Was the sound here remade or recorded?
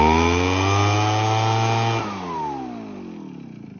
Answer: recorded